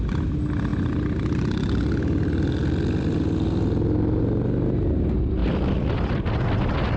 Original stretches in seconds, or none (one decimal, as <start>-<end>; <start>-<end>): 0.0-0.7; 4.2-5.4; 5.9-7.0